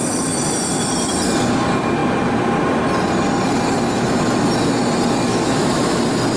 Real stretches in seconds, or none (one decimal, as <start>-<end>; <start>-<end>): 0.0-5.3; 6.0-6.4